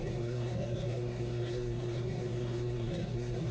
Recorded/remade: remade